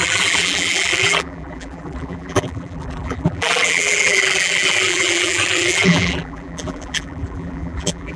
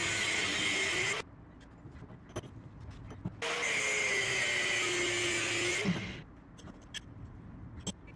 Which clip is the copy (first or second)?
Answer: first